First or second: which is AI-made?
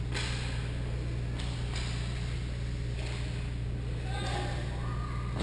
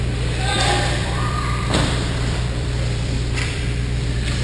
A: second